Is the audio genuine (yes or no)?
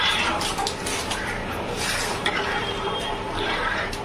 no